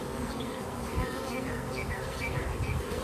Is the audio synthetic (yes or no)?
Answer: yes